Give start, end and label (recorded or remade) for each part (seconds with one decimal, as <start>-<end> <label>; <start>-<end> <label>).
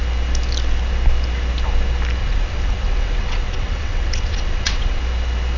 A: 0.0-2.2 recorded; 2.2-5.0 remade; 5.0-5.6 recorded